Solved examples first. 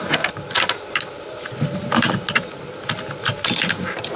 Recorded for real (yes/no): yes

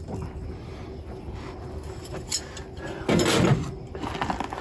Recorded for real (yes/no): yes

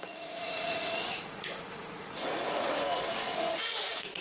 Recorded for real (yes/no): no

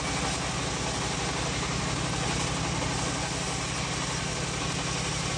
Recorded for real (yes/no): yes